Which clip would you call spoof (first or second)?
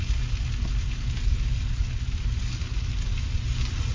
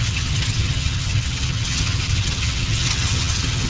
second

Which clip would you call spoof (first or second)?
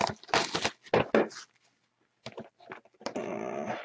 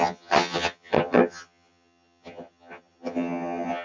second